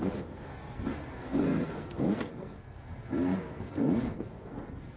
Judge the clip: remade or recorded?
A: remade